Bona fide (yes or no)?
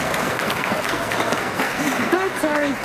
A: no